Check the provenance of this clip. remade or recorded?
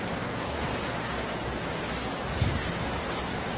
recorded